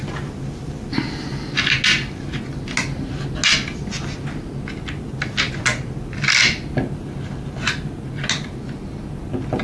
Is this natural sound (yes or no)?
yes